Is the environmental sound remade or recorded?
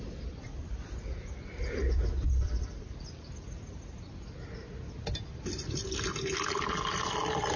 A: recorded